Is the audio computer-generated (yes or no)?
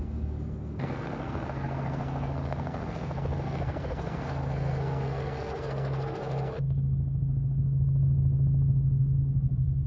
yes